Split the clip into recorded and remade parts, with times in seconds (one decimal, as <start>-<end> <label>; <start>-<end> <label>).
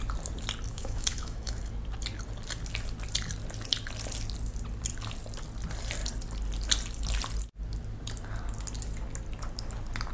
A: 0.0-0.7 recorded; 0.7-1.6 remade; 1.6-10.1 recorded